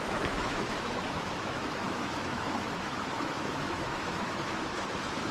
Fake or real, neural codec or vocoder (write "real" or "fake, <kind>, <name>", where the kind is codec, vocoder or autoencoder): fake, autoencoder, DAC-VAE